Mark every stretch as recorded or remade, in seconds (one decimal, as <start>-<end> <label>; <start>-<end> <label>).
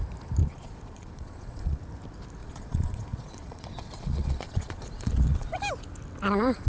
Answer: 0.0-0.4 recorded; 0.4-1.8 remade; 1.8-2.4 recorded; 2.4-5.6 remade; 5.6-6.7 recorded